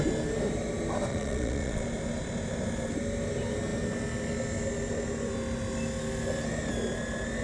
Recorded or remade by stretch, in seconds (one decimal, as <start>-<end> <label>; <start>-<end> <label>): 0.0-1.1 recorded; 1.1-1.8 remade; 1.8-7.4 recorded